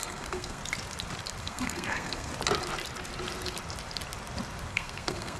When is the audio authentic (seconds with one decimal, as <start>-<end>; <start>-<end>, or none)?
0.6-1.4; 2.3-4.7